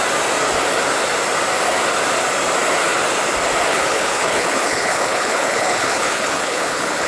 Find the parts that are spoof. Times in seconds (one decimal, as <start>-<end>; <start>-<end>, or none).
3.7-7.1